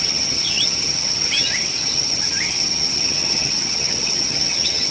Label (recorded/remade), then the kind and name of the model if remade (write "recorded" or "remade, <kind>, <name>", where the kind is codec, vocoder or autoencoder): remade, vocoder, HiFi-GAN